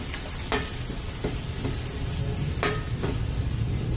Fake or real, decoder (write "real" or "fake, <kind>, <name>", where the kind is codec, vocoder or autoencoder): real